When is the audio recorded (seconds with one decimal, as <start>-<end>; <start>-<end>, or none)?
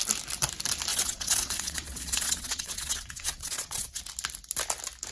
0.0-0.9; 4.0-5.1